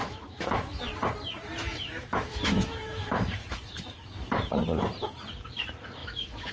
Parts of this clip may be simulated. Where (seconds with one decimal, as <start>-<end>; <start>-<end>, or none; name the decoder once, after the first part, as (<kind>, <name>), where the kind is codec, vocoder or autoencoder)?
0.0-0.9 (autoencoder, DAC-VAE); 1.6-4.5; 6.0-6.5